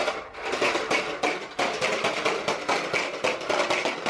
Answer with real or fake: real